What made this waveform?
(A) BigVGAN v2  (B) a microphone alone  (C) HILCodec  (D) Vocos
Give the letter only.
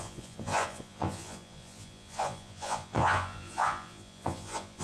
D